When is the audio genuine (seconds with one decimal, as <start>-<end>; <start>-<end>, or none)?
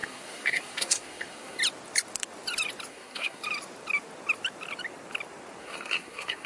1.6-2.9; 3.4-5.6